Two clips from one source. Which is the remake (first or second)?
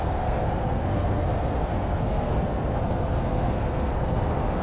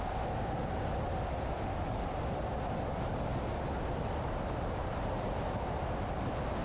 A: first